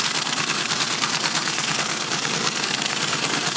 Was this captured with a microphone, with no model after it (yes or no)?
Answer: no